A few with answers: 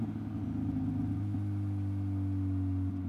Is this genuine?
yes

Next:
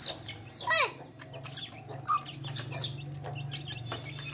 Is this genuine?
yes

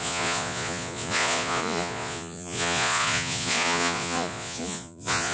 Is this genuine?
no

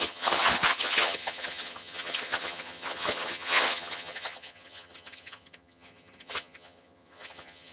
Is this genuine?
no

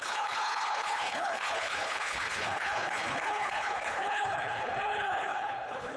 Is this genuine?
no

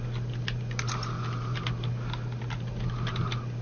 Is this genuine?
yes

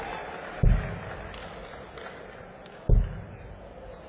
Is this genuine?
yes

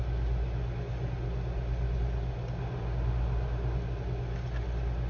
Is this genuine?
yes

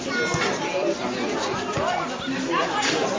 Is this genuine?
yes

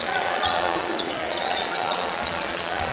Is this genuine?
no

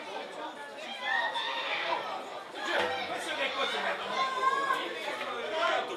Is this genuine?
yes